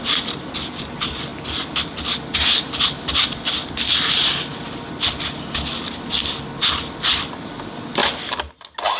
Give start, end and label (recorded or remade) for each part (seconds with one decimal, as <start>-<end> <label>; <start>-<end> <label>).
0.0-1.3 remade; 1.3-2.7 recorded; 2.7-4.5 remade; 4.5-7.3 recorded; 7.3-8.0 remade; 8.0-9.0 recorded